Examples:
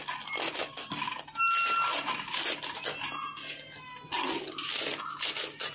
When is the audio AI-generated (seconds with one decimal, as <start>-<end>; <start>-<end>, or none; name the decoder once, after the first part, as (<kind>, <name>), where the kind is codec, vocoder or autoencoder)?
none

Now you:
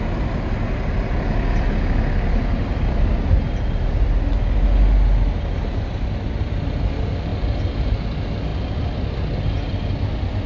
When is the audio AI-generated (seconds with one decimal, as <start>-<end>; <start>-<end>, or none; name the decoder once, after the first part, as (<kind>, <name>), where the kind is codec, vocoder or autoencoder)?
none

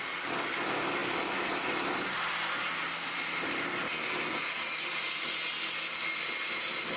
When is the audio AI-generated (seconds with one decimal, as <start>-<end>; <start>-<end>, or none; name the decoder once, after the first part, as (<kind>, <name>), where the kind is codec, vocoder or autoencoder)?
none

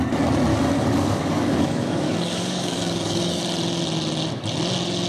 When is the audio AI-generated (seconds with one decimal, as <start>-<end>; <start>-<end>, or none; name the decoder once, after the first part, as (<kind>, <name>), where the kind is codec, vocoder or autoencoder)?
0.5-3.4 (codec, DAC)